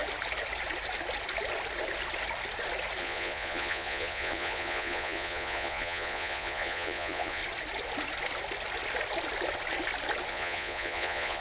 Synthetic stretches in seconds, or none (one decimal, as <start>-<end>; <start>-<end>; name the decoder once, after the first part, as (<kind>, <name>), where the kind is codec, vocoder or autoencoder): 3.0-7.4 (vocoder, Vocos); 10.3-11.4